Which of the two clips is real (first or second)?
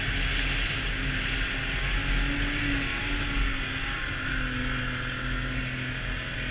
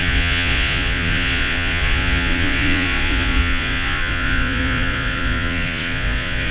first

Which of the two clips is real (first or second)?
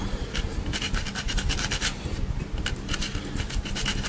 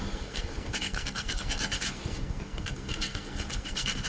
first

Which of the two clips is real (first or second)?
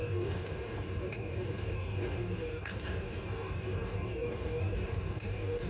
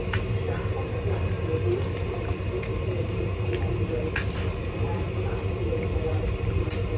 second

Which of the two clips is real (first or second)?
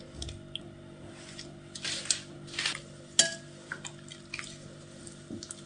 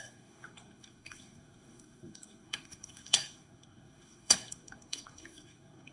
first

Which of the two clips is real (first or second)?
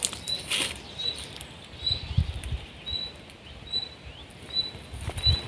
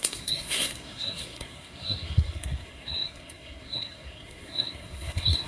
first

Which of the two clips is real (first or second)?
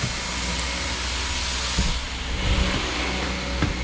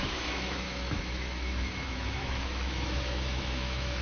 first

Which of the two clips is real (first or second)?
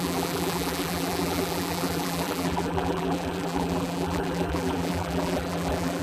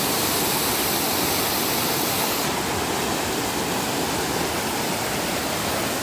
second